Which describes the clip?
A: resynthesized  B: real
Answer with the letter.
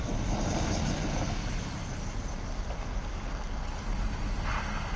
B